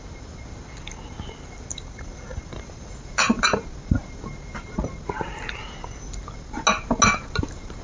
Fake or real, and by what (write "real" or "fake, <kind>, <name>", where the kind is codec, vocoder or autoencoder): real